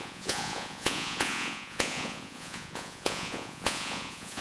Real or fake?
fake